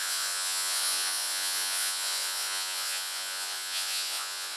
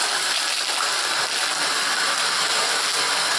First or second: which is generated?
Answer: first